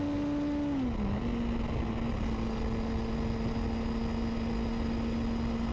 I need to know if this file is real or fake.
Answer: real